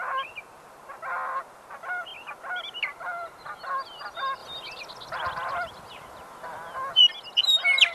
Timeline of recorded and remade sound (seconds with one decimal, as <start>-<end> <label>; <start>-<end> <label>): 0.0-7.9 recorded